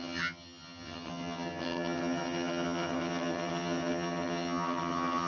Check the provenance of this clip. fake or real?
fake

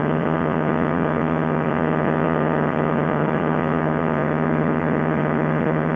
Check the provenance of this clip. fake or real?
fake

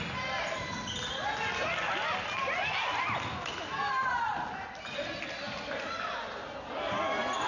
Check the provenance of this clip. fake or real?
real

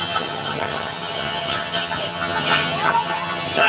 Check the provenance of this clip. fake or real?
fake